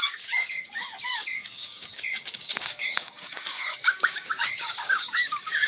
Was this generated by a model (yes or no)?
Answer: yes